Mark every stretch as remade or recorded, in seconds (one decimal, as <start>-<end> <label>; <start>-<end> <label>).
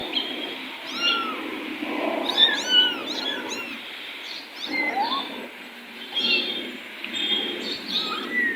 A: 0.0-1.1 remade; 1.1-8.6 recorded